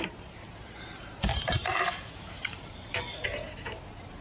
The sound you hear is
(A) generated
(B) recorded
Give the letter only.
A